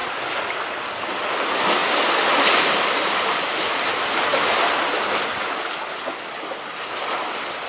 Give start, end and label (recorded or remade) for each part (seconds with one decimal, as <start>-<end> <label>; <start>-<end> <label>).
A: 0.0-7.7 recorded